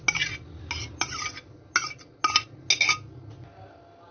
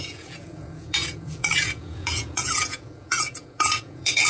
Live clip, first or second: first